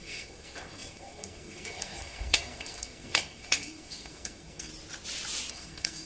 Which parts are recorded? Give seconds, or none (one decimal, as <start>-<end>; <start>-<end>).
4.7-5.5